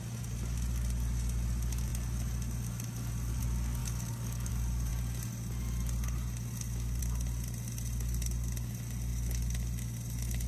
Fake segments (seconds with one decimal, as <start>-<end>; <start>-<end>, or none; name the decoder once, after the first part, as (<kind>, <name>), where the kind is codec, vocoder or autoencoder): 3.8-4.5 (codec, DAC)